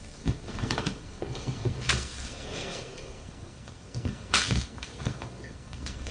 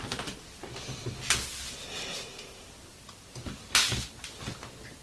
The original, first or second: second